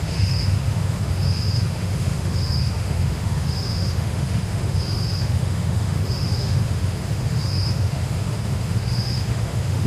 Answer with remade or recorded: remade